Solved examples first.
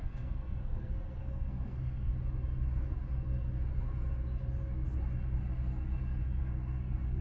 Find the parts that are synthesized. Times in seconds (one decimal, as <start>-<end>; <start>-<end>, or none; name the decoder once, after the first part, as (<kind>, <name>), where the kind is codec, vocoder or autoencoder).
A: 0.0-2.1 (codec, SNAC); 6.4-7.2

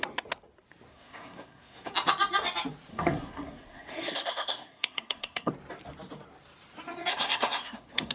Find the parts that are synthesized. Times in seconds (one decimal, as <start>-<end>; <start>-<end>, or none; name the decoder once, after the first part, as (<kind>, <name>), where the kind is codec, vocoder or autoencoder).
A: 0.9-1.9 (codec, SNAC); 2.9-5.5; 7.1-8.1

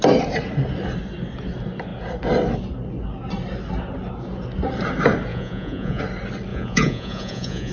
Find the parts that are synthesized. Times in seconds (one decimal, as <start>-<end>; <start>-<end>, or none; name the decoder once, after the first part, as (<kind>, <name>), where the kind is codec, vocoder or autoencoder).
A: 5.3-6.0 (vocoder, Vocos); 6.5-7.7

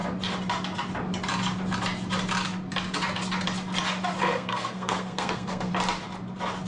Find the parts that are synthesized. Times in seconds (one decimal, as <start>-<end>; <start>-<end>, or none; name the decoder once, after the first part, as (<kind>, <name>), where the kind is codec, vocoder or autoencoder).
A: 4.2-5.7 (codec, SNAC)

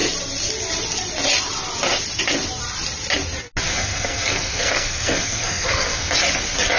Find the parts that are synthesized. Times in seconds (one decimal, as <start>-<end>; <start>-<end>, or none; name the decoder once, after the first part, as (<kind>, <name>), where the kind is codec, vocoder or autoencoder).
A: 3.7-6.1 (codec, SNAC)

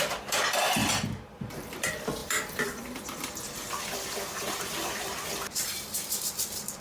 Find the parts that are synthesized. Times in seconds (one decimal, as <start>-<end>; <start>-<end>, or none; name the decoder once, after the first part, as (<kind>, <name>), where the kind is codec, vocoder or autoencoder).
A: 0.0-0.8 (vocoder, BigVGAN v2); 1.4-6.8

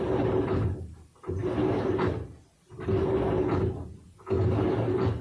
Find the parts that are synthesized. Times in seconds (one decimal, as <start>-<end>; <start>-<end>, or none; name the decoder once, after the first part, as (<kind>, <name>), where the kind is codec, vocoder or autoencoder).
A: none